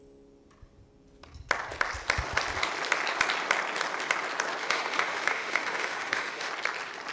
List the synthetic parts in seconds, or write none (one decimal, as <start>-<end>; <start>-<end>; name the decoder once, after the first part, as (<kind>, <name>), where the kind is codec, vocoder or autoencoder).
4.6-6.5 (autoencoder, DAC-VAE)